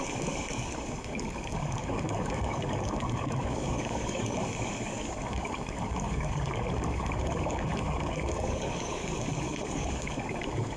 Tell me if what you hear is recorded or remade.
remade